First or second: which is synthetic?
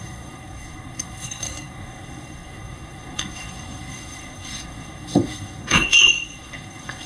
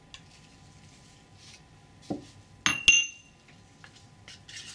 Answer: first